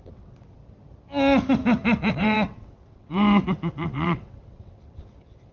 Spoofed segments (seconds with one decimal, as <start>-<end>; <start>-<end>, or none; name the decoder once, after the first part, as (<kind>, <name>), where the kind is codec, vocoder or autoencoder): 0.0-0.6 (vocoder, WaveNeXt); 2.1-5.5